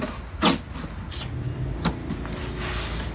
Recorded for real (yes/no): yes